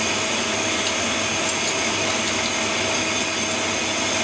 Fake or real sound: real